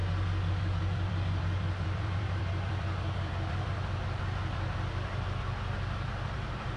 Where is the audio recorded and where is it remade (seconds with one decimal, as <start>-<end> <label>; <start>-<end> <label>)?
0.0-0.5 recorded; 0.5-6.8 remade